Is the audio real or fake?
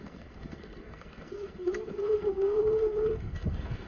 fake